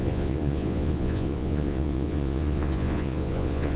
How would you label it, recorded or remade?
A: remade